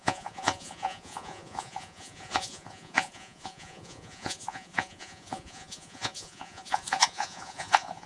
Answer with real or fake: fake